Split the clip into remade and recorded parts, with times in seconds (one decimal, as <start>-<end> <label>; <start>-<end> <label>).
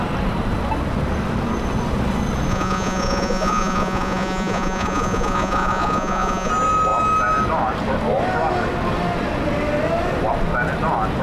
0.0-2.5 recorded; 2.5-6.5 remade; 6.5-11.2 recorded